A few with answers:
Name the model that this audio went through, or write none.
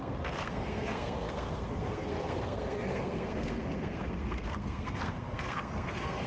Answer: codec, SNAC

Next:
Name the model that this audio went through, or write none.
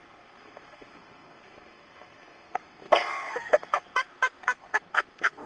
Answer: codec, SNAC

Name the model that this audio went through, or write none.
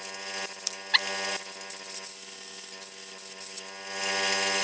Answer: none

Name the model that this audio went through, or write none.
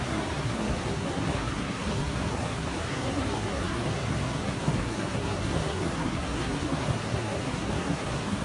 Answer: codec, SNAC